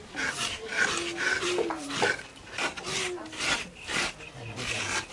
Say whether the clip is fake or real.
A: real